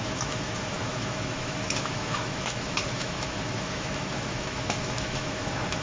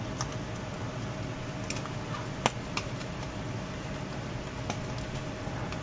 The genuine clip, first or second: second